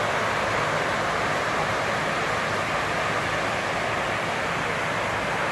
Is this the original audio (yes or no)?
yes